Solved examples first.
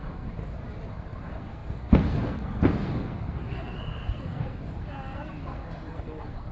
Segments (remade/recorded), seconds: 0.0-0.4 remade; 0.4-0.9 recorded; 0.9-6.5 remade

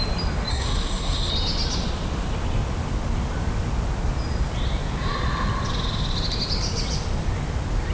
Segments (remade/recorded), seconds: 0.0-0.5 recorded; 0.5-1.3 remade; 1.3-7.9 recorded

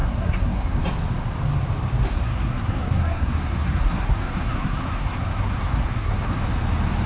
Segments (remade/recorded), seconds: 0.0-0.8 remade; 0.8-2.1 recorded; 2.1-6.4 remade; 6.4-7.1 recorded

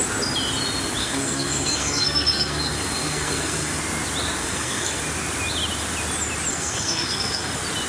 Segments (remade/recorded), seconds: 0.0-1.0 recorded; 1.0-3.8 remade; 3.8-4.4 recorded; 4.4-5.0 remade; 5.0-6.5 recorded; 6.5-7.5 remade; 7.5-7.9 recorded

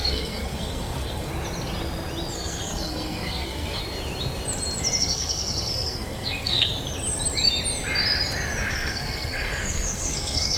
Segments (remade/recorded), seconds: 0.0-1.3 remade; 1.3-2.3 recorded; 2.3-3.8 remade; 3.8-5.0 recorded; 5.0-6.7 remade; 6.7-8.7 recorded; 8.7-10.6 remade

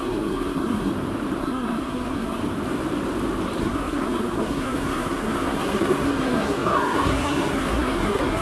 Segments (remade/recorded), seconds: 0.0-0.9 remade; 0.9-1.4 recorded; 1.4-2.4 remade; 2.4-3.6 recorded; 3.6-8.4 remade